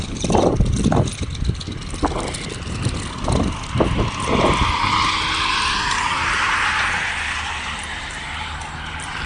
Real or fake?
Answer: real